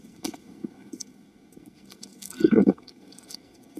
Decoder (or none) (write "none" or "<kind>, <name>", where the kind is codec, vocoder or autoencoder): codec, SNAC